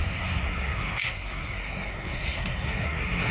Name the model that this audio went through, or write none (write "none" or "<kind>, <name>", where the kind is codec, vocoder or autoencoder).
codec, SNAC